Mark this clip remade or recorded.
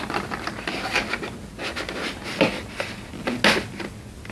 recorded